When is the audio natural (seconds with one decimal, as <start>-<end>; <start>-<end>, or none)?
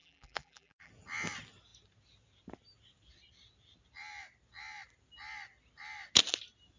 0.9-6.8